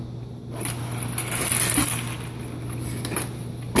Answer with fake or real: real